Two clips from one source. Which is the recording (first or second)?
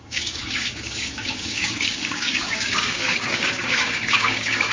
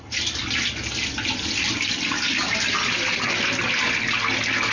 second